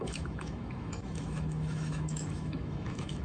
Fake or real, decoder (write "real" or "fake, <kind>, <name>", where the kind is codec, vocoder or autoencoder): fake, autoencoder, DAC-VAE